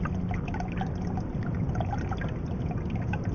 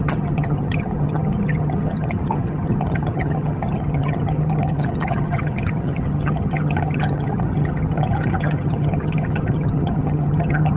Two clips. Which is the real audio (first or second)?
first